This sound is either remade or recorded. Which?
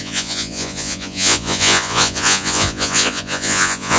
remade